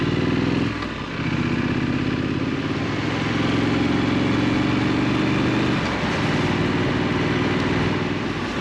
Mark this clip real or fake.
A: real